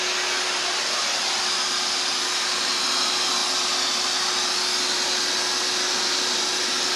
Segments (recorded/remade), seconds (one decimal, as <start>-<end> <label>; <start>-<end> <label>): 0.0-7.0 recorded